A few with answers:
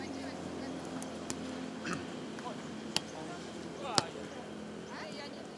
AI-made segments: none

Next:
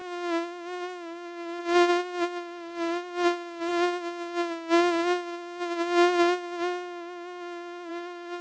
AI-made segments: 0.0-1.6 (autoencoder, DAC-VAE); 3.7-7.9